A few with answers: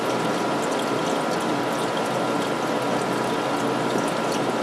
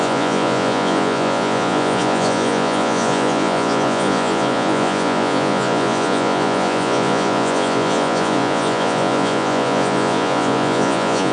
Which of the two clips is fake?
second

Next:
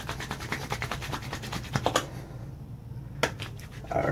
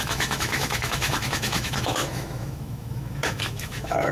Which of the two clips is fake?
second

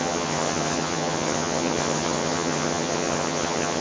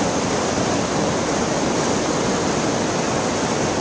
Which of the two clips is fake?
first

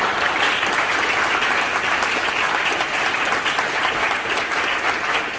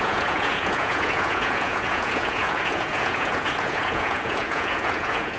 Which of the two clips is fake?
second